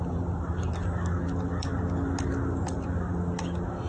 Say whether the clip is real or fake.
real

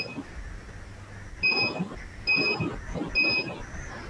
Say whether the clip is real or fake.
real